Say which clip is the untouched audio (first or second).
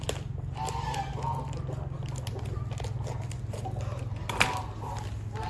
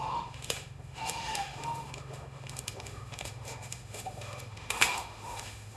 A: first